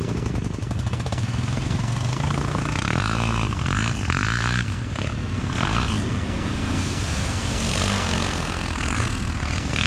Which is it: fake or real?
fake